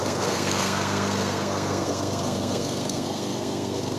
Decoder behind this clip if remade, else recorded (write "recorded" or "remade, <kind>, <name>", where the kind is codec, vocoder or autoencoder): remade, codec, SNAC